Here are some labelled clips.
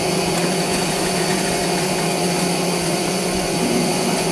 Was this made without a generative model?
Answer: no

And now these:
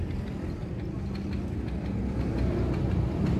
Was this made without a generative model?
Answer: yes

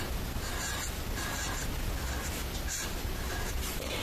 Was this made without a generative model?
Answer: yes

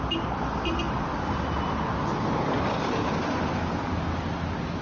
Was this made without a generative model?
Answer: yes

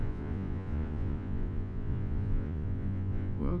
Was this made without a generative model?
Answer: no